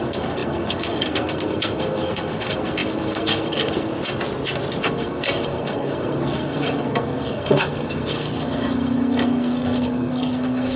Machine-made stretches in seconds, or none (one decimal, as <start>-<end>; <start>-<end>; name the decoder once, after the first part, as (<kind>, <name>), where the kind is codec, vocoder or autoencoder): 0.0-3.9 (codec, SNAC); 4.8-10.8